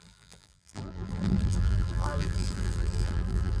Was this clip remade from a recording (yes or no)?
yes